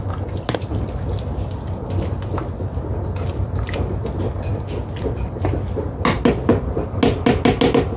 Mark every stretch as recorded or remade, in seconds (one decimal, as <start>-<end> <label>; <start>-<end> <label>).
0.0-8.0 recorded